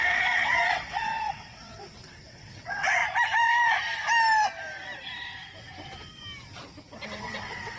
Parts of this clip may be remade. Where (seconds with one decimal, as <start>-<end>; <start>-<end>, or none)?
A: 0.0-3.0; 7.2-7.8